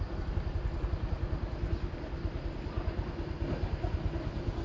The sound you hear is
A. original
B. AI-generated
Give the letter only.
A